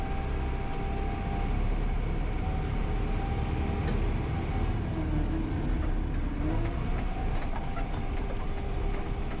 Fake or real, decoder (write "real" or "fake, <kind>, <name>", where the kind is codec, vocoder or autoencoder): real